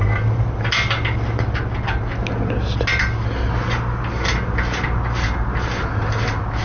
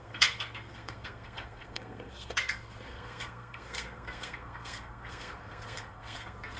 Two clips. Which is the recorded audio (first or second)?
first